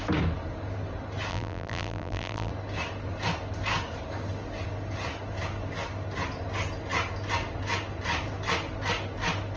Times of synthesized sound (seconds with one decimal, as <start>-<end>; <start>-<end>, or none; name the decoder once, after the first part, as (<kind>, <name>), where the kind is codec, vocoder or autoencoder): 1.3-2.5 (vocoder, BigVGAN v2)

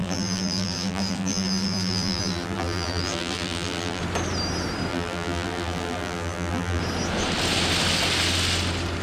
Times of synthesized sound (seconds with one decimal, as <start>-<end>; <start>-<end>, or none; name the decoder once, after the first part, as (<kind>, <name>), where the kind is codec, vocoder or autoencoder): 0.0-4.0 (vocoder, BigVGAN v2); 4.9-6.8

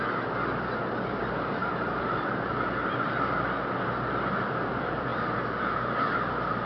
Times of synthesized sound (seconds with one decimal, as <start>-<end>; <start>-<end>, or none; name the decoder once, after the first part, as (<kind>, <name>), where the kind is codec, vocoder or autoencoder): 1.6-2.5 (vocoder, BigVGAN v2); 5.1-5.7

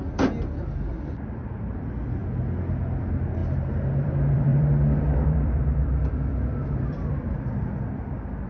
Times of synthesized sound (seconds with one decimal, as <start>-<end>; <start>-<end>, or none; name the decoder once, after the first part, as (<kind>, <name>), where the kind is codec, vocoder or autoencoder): 0.0-2.2 (vocoder, BigVGAN v2); 3.0-8.5